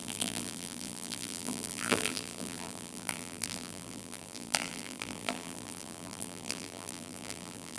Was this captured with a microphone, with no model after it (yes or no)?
no